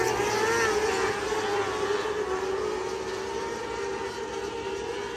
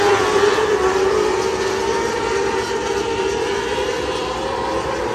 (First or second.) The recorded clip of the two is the first